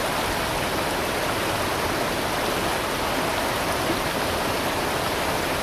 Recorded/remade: recorded